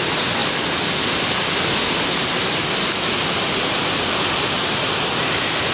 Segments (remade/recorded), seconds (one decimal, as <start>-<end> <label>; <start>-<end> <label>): 0.0-5.7 recorded